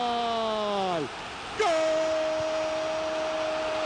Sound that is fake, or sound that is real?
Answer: real